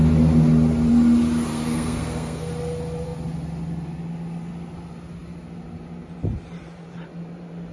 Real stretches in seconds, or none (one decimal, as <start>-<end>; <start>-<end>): 0.0-1.5; 2.5-7.7